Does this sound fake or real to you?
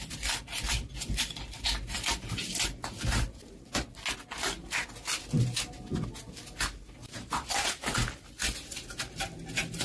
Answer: real